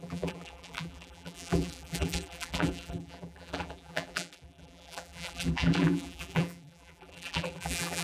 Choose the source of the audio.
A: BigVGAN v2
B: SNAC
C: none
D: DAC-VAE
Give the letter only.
A